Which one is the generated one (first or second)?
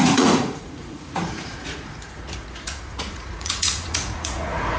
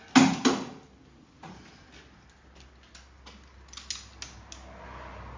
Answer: first